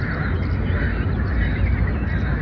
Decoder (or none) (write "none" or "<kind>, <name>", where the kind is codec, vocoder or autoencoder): none